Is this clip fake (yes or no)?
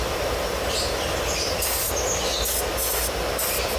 no